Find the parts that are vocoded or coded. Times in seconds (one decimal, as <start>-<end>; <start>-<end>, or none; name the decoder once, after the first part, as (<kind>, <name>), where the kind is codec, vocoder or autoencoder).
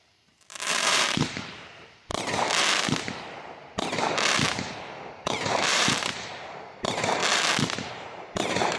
0.0-2.1 (vocoder, BigVGAN v2); 5.1-7.2; 7.9-8.8